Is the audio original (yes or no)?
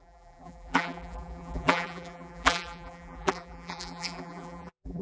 no